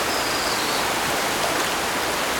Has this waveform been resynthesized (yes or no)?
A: no